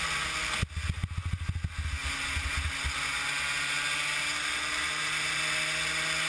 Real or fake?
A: real